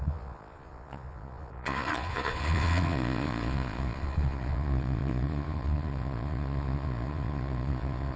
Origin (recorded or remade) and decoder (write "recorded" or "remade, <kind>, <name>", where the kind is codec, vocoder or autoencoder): remade, vocoder, Vocos